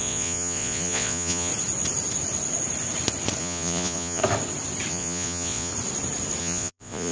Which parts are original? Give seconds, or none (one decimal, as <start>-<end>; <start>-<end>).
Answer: 1.5-3.4; 4.2-4.9; 5.7-6.4